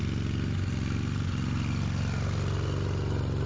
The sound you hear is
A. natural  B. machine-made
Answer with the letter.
A